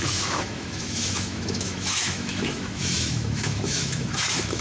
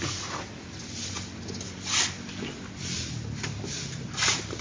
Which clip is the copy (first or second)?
first